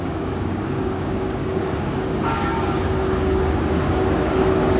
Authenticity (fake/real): fake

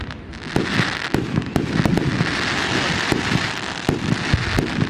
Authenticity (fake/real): real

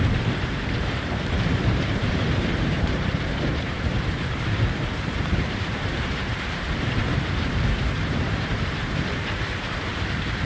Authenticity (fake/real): fake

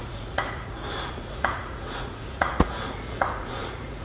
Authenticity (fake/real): fake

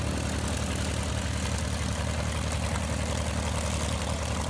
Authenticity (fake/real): real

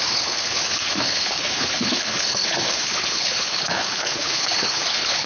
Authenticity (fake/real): fake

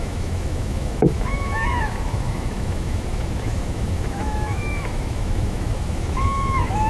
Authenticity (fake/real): fake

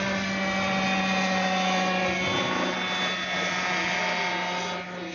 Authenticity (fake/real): real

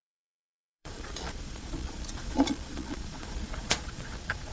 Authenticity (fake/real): fake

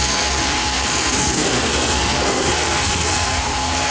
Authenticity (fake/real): fake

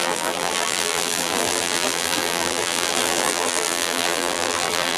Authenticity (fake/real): fake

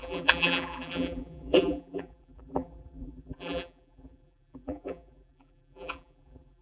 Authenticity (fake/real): fake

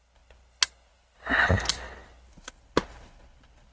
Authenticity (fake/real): real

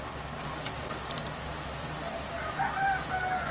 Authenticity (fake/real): real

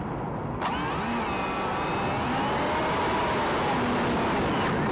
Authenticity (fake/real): real